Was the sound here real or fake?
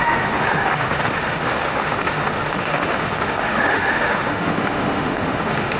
fake